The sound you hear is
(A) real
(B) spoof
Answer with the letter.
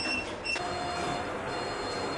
B